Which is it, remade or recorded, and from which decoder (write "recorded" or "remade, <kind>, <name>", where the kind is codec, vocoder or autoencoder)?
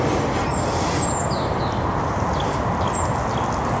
recorded